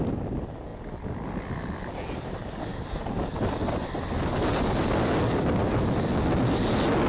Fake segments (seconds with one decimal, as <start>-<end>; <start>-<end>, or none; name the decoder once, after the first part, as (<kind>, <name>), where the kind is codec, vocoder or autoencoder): none